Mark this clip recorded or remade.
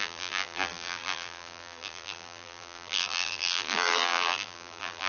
remade